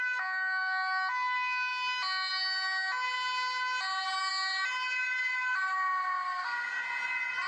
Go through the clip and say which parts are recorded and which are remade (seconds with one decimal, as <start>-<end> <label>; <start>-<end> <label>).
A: 0.0-7.5 recorded